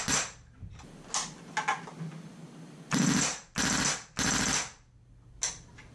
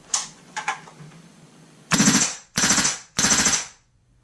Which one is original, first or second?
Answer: first